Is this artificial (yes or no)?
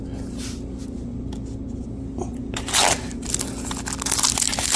no